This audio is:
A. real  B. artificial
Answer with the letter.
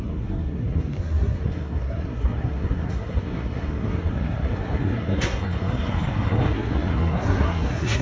B